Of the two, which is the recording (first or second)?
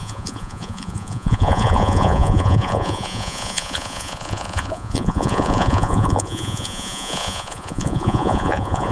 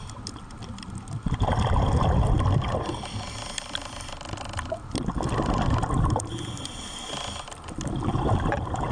second